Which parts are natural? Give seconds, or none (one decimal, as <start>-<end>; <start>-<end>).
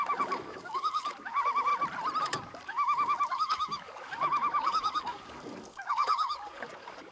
1.7-2.2